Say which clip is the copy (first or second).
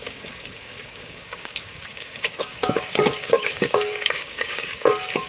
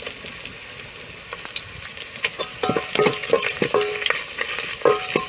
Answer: first